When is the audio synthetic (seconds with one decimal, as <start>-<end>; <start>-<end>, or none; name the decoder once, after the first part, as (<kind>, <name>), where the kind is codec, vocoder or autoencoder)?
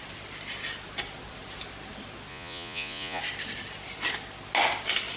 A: 2.3-3.2 (vocoder, Vocos)